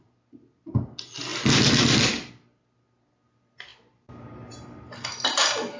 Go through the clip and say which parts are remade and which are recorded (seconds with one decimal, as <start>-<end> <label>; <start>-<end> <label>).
0.0-5.8 recorded